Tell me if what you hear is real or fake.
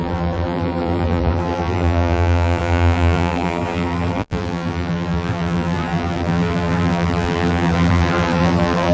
fake